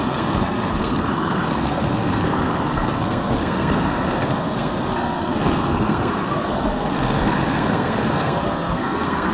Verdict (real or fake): fake